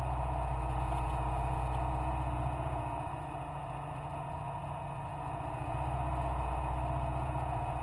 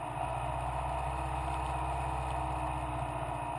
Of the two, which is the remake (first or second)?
first